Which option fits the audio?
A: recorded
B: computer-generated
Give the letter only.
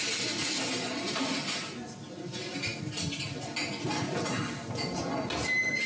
A